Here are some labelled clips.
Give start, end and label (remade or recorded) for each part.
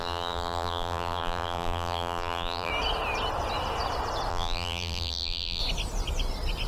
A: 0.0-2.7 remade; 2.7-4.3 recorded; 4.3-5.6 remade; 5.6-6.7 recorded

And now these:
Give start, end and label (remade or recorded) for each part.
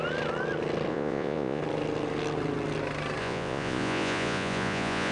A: 0.0-0.9 recorded; 0.9-1.6 remade; 1.6-3.2 recorded; 3.2-5.1 remade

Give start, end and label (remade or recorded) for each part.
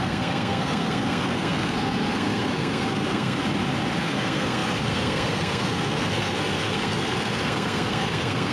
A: 0.0-3.4 remade; 3.4-4.0 recorded; 4.0-8.5 remade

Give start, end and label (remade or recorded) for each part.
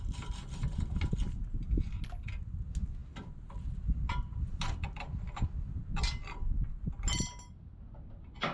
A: 0.0-8.5 recorded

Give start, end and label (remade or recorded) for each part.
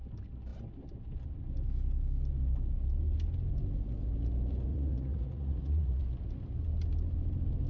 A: 0.0-4.7 recorded; 4.7-6.0 remade; 6.0-7.7 recorded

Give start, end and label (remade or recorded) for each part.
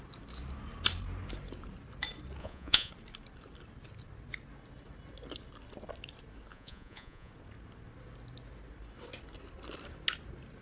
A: 0.0-2.4 recorded; 2.4-2.9 remade; 2.9-6.5 recorded; 6.5-7.3 remade; 7.3-10.6 recorded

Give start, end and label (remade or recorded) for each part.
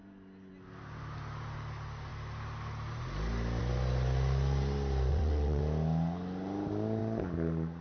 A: 0.0-5.1 recorded; 5.1-5.6 remade; 5.6-7.8 recorded